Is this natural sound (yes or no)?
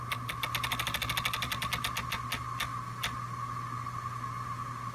yes